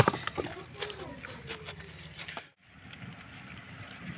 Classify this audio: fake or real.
real